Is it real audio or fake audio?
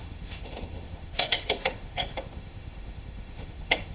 fake